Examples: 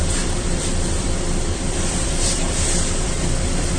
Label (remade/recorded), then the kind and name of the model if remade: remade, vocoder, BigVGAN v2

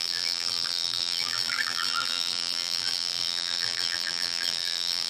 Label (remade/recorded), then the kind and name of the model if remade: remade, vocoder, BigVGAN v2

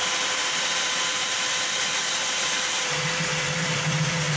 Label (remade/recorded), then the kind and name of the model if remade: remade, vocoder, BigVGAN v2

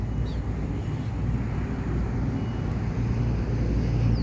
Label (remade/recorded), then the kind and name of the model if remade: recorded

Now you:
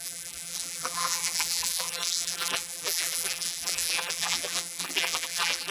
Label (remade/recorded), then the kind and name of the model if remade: remade, vocoder, BigVGAN v2